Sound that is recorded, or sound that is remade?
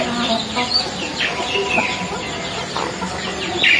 recorded